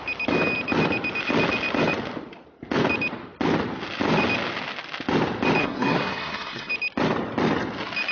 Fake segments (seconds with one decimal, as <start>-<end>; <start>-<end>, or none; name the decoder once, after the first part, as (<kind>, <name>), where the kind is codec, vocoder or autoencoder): 5.6-6.7 (codec, SNAC)